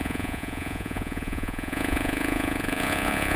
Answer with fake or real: fake